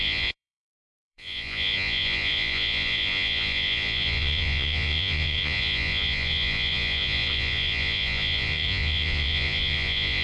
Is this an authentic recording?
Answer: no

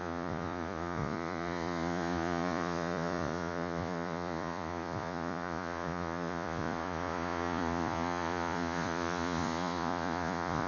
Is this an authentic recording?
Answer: no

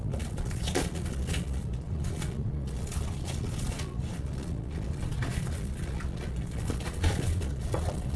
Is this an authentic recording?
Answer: no